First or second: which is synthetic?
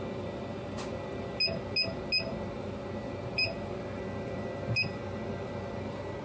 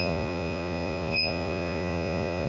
second